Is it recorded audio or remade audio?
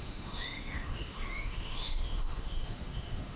remade